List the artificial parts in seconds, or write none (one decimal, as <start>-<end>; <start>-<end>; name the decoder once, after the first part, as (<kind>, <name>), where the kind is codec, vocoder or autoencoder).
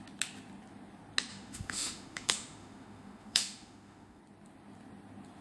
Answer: 1.3-4.2 (autoencoder, DAC-VAE)